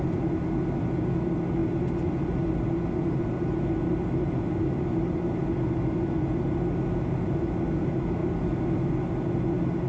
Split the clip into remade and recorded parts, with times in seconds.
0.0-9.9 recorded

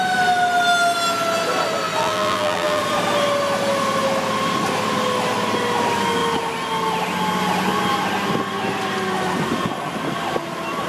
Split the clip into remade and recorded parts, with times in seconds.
0.0-2.0 recorded; 2.0-2.8 remade; 2.8-10.9 recorded

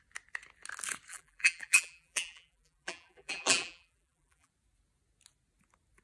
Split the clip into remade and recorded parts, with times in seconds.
0.0-1.1 recorded; 1.1-4.5 remade; 4.5-6.0 recorded

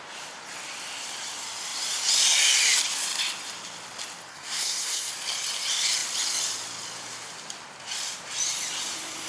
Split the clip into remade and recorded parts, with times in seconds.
0.0-4.3 recorded; 4.3-5.1 remade; 5.1-9.3 recorded

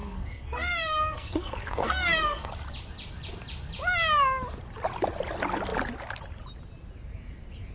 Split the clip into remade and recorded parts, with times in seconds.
0.0-2.5 remade; 2.5-7.7 recorded

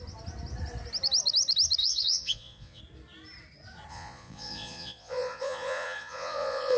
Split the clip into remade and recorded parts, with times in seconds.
0.0-1.8 recorded; 1.8-2.8 remade; 2.8-3.9 recorded; 3.9-6.8 remade